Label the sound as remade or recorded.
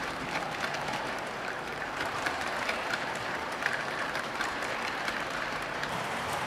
remade